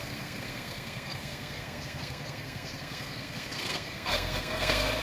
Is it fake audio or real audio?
fake